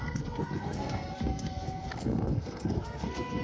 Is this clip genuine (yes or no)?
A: no